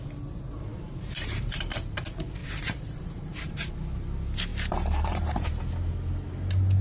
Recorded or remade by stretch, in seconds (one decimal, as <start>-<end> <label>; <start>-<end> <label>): 0.0-0.7 recorded; 0.7-1.6 remade; 1.6-2.4 recorded; 2.4-3.7 remade; 3.7-4.5 recorded; 4.5-5.6 remade; 5.6-6.8 recorded